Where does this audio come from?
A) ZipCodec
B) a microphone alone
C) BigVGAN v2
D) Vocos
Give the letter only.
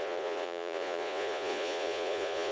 D